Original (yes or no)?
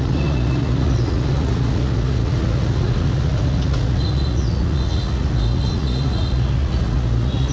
no